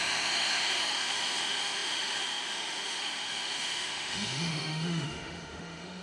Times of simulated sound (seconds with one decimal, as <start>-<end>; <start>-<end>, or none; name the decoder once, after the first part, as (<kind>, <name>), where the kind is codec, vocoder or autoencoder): 0.0-6.0 (autoencoder, DAC-VAE)